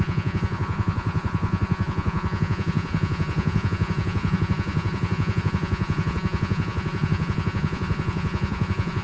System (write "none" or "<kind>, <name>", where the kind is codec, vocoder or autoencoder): vocoder, Vocos